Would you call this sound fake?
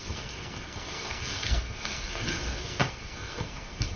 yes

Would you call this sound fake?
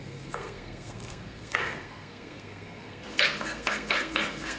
yes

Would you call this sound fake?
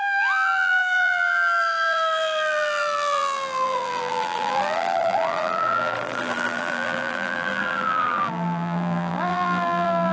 yes